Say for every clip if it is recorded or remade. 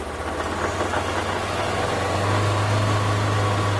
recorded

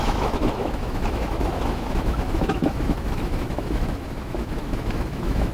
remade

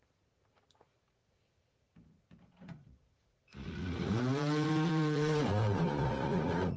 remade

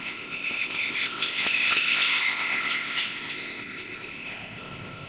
remade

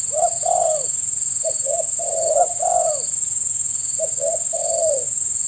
remade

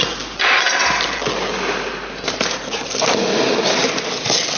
recorded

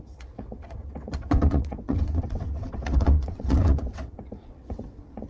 remade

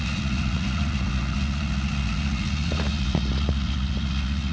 remade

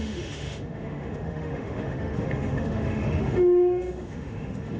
remade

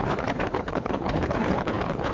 remade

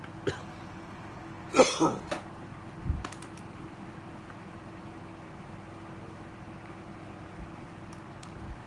recorded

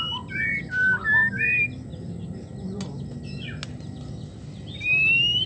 recorded